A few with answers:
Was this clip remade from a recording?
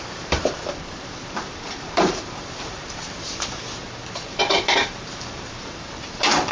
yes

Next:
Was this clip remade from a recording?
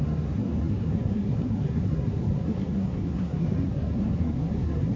yes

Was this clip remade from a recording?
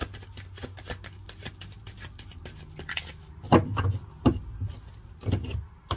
no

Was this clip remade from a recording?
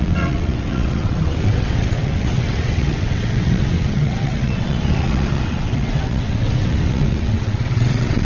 yes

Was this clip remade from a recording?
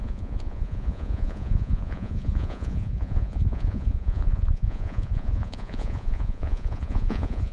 yes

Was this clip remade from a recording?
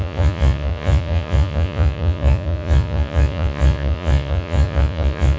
yes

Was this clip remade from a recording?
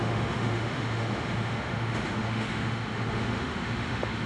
yes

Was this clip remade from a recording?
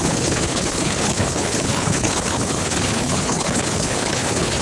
yes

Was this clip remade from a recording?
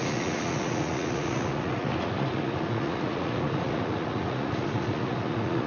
yes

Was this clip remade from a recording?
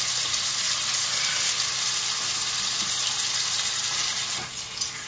no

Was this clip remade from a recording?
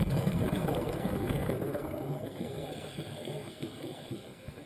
yes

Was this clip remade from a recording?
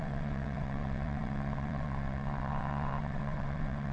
yes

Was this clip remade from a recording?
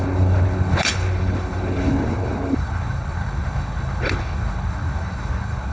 yes